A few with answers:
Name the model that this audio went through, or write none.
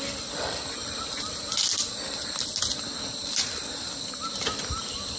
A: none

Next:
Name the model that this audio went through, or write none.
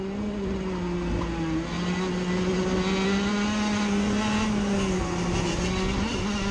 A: none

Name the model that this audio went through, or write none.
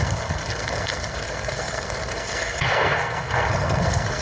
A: codec, SNAC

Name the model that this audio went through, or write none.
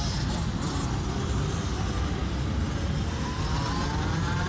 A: none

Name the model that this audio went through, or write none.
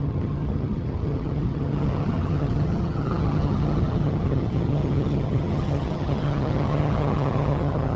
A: vocoder, HiFi-GAN